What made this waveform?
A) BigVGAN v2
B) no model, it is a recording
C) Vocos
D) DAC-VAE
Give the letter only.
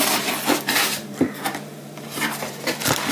A